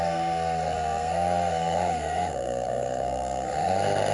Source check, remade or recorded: remade